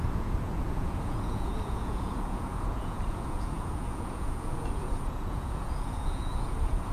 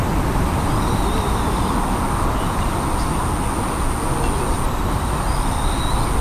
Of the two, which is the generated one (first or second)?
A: first